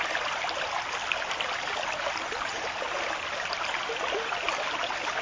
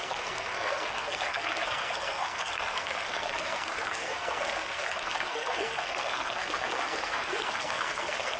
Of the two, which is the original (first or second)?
first